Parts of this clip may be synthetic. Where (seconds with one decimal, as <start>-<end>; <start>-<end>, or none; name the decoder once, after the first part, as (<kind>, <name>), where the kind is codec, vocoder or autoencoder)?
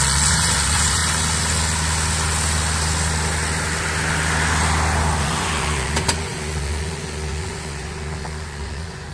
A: 0.0-1.0 (vocoder, Vocos); 5.2-9.1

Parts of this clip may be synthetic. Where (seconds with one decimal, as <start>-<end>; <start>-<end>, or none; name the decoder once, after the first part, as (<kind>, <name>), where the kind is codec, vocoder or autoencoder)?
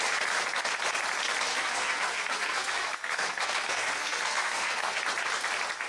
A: 1.5-5.0 (codec, SNAC)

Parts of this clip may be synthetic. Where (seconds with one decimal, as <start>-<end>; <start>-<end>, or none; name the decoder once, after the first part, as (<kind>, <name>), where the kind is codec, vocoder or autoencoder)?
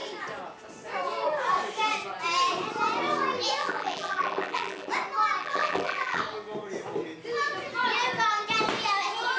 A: 3.6-4.9 (vocoder, BigVGAN v2); 5.4-6.2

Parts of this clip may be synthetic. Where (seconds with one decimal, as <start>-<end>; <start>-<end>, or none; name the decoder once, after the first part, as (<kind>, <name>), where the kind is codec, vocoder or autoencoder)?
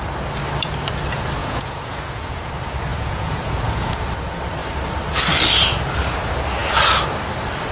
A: 1.4-2.5 (vocoder, Vocos); 2.9-4.0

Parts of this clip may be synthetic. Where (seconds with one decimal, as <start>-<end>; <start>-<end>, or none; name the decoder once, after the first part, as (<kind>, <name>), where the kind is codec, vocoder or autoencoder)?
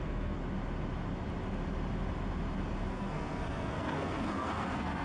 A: 0.0-0.4 (codec, SNAC); 2.9-5.0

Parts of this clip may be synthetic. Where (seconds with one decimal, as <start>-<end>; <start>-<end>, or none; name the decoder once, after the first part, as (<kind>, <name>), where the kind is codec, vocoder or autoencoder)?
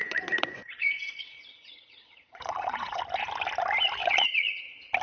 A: 0.0-3.0 (vocoder, Vocos); 4.0-4.6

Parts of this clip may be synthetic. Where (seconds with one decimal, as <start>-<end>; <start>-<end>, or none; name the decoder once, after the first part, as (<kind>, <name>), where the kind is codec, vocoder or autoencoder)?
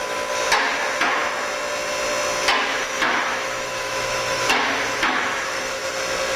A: 2.8-6.0 (autoencoder, DAC-VAE)